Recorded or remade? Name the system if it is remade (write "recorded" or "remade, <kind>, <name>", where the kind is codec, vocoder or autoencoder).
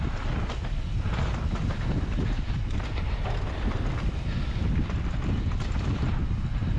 recorded